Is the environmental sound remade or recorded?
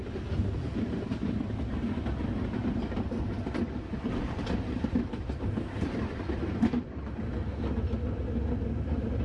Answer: recorded